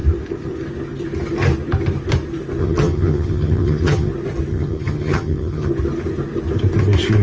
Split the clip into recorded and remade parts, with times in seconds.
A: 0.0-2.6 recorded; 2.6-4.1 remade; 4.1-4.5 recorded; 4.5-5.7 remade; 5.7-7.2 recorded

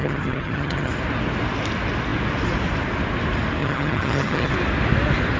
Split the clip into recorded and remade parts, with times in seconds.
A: 0.0-0.9 remade; 0.9-3.6 recorded; 3.6-4.5 remade; 4.5-5.4 recorded

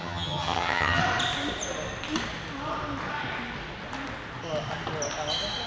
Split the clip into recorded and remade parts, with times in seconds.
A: 0.0-1.0 remade; 1.0-5.7 recorded

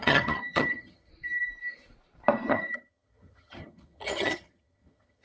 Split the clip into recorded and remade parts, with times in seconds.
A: 0.0-1.1 remade; 1.1-2.5 recorded; 2.5-5.2 remade

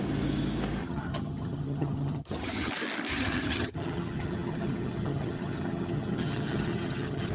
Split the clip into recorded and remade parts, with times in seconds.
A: 0.0-0.8 recorded; 0.8-2.7 remade; 2.7-3.1 recorded; 3.1-7.3 remade